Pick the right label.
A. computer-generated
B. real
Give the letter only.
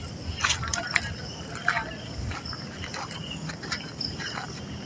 B